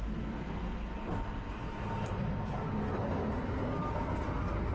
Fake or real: real